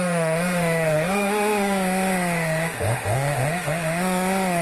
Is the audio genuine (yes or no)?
no